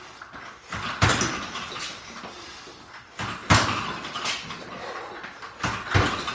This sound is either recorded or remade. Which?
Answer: recorded